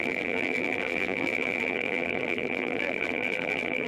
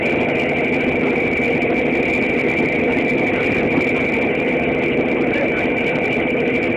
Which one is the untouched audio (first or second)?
second